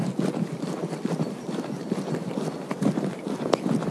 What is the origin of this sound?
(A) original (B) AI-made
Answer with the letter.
A